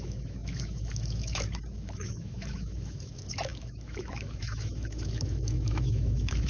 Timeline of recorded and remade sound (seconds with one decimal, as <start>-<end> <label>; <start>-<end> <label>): 0.0-6.5 remade